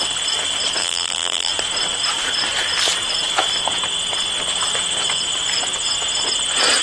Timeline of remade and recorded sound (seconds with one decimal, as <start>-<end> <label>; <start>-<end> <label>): 0.0-0.8 recorded; 0.8-1.5 remade; 1.5-6.8 recorded